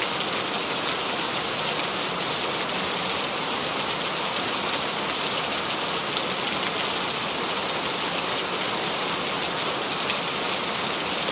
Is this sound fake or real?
real